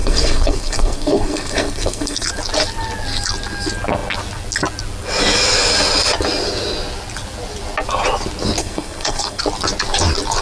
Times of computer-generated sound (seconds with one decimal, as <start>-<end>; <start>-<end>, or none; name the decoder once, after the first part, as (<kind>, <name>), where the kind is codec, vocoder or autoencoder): 0.0-2.3 (codec, SNAC); 8.6-9.4